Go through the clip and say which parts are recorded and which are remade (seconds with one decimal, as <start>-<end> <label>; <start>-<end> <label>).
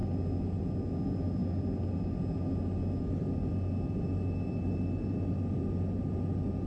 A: 0.0-6.7 recorded